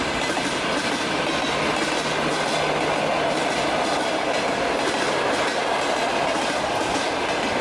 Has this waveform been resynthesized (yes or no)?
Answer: no